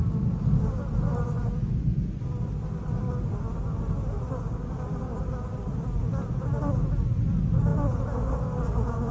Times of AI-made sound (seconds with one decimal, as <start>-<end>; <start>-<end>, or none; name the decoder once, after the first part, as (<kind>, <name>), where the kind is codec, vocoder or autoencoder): none